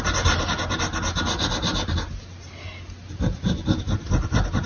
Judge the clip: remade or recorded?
recorded